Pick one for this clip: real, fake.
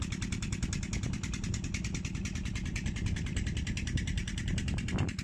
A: real